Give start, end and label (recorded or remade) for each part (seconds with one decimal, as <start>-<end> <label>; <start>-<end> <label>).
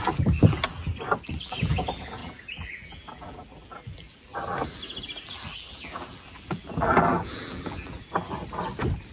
0.0-0.9 remade; 0.9-1.4 recorded; 1.4-8.4 remade; 8.4-9.1 recorded